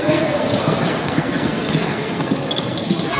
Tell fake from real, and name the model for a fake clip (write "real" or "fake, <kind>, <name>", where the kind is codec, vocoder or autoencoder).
fake, codec, SNAC